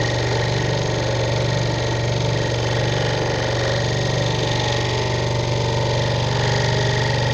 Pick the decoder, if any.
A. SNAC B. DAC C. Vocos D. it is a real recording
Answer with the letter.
D